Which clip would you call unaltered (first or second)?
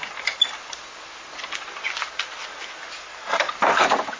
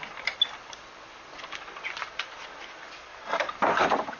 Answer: first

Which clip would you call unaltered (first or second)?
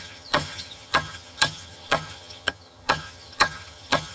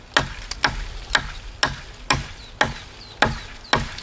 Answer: second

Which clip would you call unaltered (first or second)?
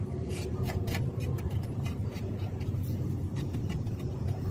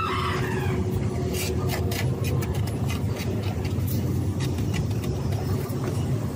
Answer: second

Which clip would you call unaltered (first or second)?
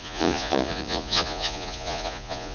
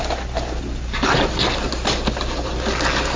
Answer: second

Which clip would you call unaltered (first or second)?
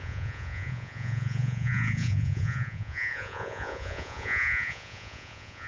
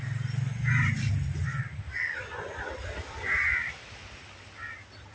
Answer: second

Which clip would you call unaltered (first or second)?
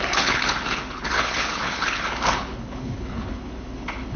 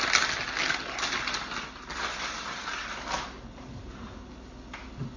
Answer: second